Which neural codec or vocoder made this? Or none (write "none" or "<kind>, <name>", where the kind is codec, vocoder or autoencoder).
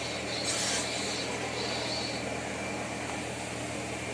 none